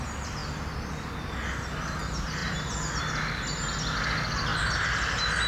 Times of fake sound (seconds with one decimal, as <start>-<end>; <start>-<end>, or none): none